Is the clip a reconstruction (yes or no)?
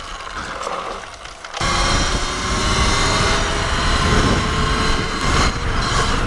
no